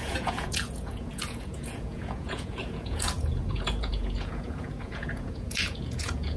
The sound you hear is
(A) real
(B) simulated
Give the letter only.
B